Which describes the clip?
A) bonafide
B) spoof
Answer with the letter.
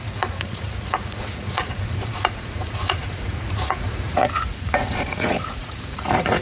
B